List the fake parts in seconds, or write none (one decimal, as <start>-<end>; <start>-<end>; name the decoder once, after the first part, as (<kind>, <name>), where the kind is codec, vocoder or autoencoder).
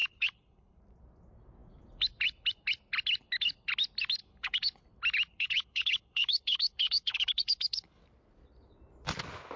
0.0-0.8 (codec, HILCodec); 4.2-4.8; 5.3-8.0